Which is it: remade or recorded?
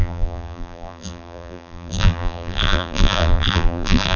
remade